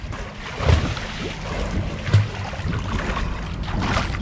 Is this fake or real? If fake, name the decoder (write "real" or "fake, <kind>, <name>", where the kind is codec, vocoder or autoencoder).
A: real